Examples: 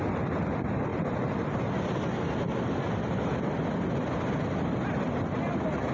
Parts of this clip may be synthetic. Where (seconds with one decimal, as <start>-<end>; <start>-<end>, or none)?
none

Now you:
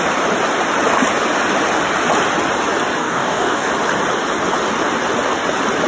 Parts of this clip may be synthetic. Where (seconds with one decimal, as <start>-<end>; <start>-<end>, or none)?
3.0-3.7

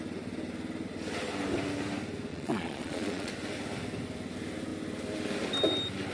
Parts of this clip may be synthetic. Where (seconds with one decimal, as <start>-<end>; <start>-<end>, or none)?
2.3-3.3